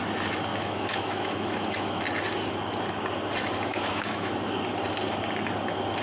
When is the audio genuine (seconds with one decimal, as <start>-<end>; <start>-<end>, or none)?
0.0-0.5; 2.0-3.7; 4.3-6.0